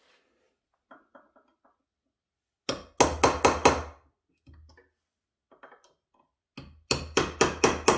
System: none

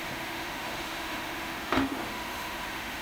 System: autoencoder, DAC-VAE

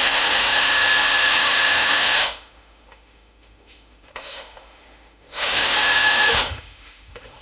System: autoencoder, DAC-VAE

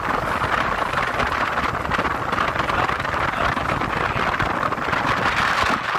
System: none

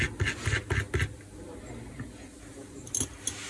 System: none